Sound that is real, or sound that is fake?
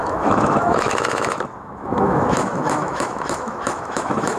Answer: fake